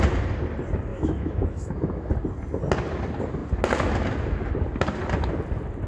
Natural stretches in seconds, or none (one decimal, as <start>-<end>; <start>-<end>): 0.0-0.9; 2.1-5.9

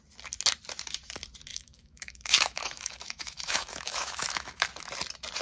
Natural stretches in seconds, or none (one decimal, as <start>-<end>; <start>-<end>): 0.0-1.5; 4.7-5.4

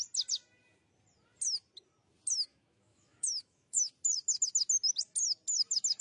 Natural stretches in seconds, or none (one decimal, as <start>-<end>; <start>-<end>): 0.0-2.5; 3.9-6.0

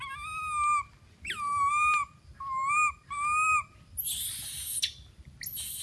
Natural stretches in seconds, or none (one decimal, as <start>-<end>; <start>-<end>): 0.0-5.8

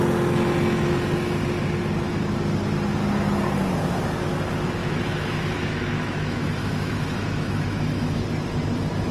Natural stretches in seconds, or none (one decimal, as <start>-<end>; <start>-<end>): 0.0-4.8; 8.2-9.1